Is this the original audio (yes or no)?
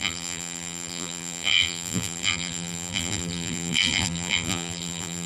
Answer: no